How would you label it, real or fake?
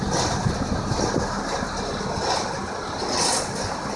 real